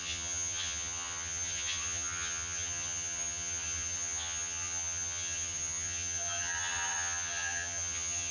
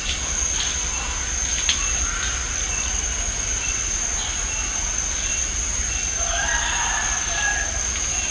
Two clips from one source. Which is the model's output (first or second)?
first